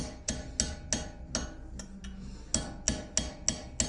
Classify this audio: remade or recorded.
recorded